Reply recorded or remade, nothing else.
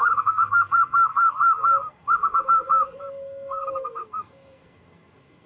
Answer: remade